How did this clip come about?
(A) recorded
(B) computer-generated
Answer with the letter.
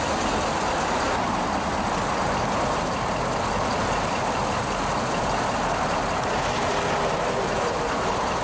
B